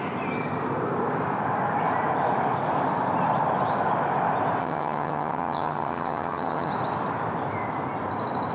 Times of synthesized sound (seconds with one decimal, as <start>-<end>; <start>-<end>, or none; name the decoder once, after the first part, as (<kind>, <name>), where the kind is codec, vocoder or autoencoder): 4.6-6.7 (vocoder, HiFi-GAN)